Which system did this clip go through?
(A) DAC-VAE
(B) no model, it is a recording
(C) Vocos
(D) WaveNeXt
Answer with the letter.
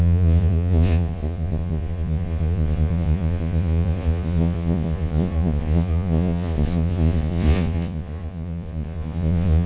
C